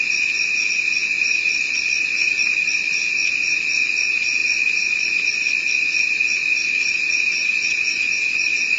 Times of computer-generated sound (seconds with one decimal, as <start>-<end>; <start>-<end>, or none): 7.4-8.8